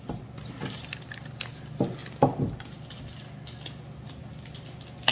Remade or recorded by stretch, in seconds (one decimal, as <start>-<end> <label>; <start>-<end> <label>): 0.0-5.1 recorded